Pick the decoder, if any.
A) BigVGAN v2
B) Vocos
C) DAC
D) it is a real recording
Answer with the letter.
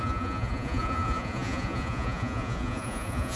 B